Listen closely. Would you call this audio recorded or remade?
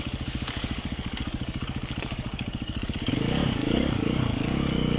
remade